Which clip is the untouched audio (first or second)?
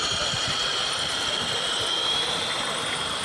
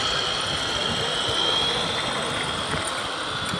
second